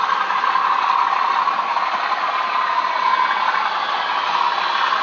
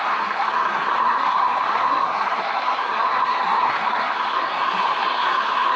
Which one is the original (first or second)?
first